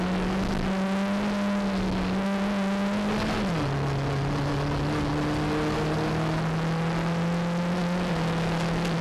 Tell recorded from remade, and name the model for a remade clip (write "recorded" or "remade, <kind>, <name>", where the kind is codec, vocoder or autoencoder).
recorded